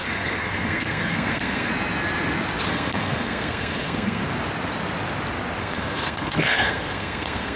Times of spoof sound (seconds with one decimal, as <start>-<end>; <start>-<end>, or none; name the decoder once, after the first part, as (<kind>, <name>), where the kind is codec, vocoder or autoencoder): 0.0-1.7 (codec, SNAC); 2.7-4.2; 5.6-7.6